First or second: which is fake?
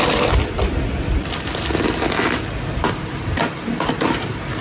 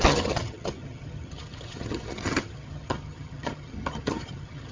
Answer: second